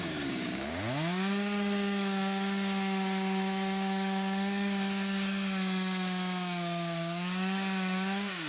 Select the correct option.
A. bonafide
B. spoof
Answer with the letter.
B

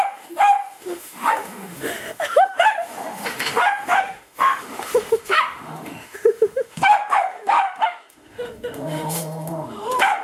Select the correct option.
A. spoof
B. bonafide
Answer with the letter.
A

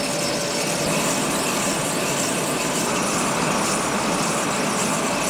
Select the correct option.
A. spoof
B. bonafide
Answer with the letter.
B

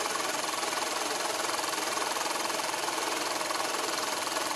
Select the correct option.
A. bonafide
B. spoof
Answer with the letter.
B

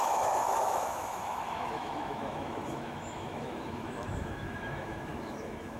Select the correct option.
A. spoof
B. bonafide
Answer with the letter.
A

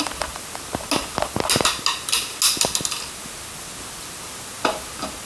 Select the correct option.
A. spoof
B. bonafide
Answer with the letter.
B